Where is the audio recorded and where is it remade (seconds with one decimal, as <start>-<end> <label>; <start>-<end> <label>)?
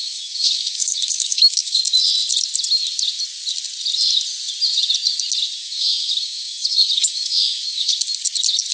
0.0-1.8 remade; 1.8-5.6 recorded; 5.6-7.9 remade; 7.9-8.7 recorded